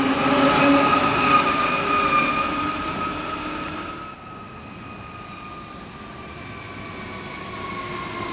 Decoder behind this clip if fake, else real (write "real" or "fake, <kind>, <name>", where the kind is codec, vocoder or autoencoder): real